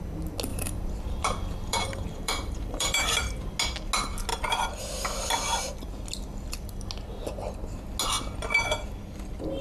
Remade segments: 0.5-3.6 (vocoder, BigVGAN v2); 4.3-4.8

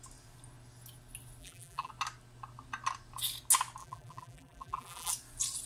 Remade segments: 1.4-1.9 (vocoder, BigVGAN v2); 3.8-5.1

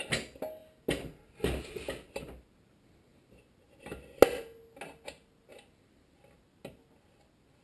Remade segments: none

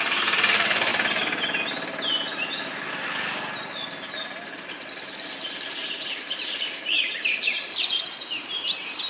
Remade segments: 0.0-0.9 (vocoder, BigVGAN v2); 5.5-9.1

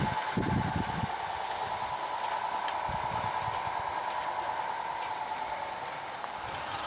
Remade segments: none

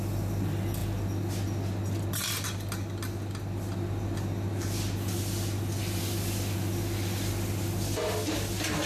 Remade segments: none